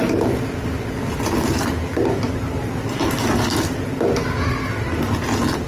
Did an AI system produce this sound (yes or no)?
no